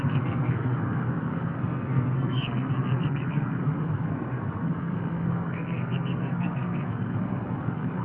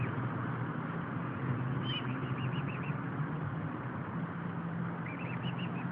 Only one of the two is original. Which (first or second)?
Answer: second